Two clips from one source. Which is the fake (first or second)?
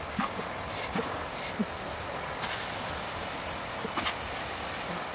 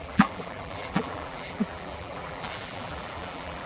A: second